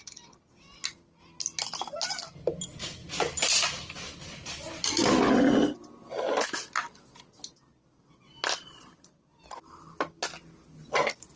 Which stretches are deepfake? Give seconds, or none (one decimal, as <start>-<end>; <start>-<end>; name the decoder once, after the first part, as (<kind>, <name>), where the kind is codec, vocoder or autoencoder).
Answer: none